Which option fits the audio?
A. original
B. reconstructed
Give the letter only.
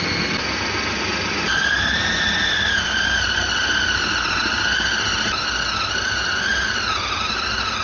A